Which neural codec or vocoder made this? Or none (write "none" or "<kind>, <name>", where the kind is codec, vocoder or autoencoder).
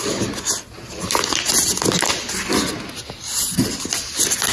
none